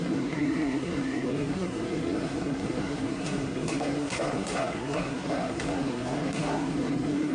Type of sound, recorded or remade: remade